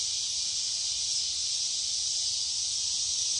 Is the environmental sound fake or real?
real